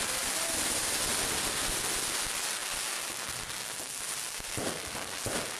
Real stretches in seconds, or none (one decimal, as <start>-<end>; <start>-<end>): 0.0-5.6

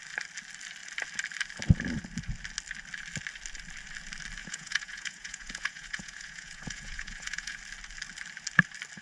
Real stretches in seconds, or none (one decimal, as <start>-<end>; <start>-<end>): 0.0-4.4; 7.6-9.0

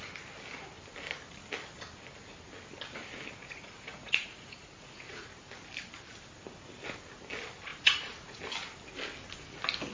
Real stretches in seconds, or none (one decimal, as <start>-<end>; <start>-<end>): 0.0-3.4; 5.5-7.7; 8.4-9.9

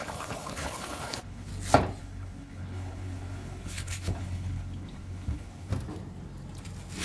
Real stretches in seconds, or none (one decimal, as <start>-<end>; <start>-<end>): 1.5-2.0; 5.7-7.0

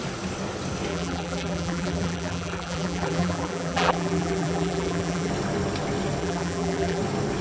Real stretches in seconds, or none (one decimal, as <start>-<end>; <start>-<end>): 0.0-0.9; 5.3-6.2; 7.0-7.4

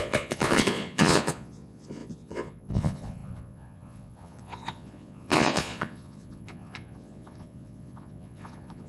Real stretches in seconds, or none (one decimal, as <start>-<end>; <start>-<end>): none